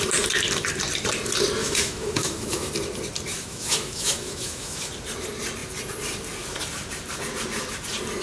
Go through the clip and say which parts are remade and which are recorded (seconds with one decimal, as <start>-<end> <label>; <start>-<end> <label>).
0.0-1.6 recorded; 1.6-2.7 remade; 2.7-3.3 recorded; 3.3-4.9 remade; 4.9-8.2 recorded